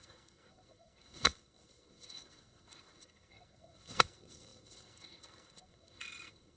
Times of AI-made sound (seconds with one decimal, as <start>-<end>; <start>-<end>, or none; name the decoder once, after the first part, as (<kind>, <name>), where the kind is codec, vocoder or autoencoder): 0.0-6.6 (codec, SNAC)